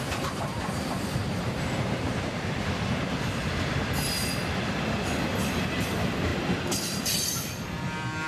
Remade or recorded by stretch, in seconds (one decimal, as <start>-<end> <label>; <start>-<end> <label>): 0.0-1.2 remade; 1.2-5.4 recorded; 5.4-8.3 remade